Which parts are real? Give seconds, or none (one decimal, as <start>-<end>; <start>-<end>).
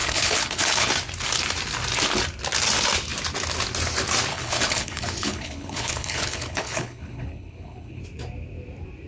0.9-4.3; 8.0-9.1